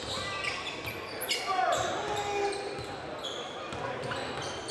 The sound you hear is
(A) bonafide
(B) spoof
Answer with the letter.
A